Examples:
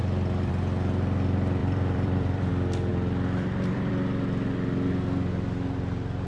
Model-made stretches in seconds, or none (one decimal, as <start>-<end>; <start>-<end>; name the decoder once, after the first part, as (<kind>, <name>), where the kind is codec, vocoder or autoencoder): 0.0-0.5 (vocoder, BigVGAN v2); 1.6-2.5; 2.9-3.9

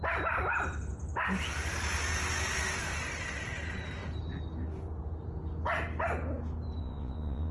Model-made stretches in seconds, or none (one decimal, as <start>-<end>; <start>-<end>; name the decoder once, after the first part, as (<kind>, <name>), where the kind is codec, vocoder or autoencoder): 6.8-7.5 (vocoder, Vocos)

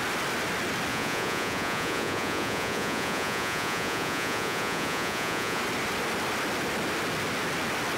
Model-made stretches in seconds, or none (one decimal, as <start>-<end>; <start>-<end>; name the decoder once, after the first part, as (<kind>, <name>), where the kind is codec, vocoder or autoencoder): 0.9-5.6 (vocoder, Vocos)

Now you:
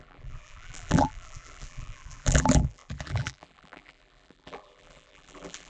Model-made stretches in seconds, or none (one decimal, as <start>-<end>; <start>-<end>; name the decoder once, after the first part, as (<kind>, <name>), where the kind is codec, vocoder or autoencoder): 0.0-5.7 (vocoder, BigVGAN v2)

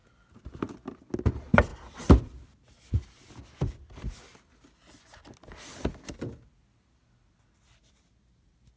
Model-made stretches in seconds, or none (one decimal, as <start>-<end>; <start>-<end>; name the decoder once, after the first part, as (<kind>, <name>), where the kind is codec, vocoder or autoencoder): 0.0-0.7 (vocoder, BigVGAN v2); 1.7-3.2

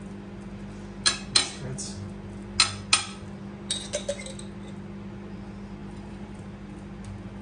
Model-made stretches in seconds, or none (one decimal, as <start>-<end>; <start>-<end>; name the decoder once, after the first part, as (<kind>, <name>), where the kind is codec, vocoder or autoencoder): 5.8-6.4 (vocoder, BigVGAN v2)